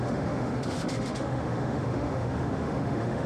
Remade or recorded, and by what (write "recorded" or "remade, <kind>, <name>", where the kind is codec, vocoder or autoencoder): remade, autoencoder, DAC-VAE